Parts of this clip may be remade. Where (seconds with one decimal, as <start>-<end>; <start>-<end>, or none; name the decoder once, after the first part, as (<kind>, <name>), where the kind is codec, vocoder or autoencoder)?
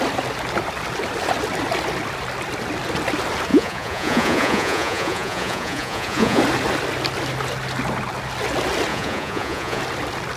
3.5-6.4 (vocoder, Vocos); 8.9-9.8